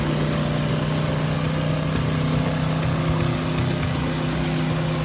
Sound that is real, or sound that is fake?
real